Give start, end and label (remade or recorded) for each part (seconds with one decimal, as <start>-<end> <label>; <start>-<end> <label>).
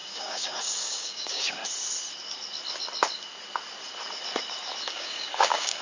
0.0-1.6 remade; 1.6-4.9 recorded; 4.9-5.8 remade